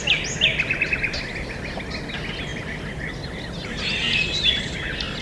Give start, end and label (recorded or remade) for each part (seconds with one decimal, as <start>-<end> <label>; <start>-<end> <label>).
0.0-5.2 recorded